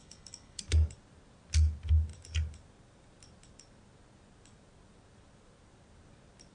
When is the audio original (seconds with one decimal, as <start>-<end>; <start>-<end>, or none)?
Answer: 0.6-6.5